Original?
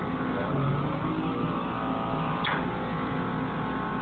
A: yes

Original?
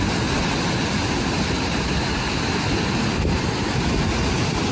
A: yes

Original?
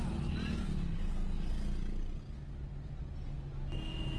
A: yes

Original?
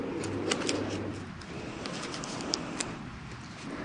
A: yes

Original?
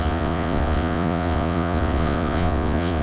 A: no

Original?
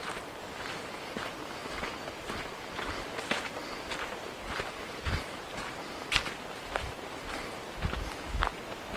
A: yes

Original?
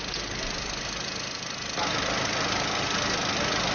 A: yes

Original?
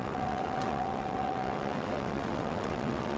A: no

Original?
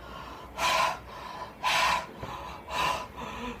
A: yes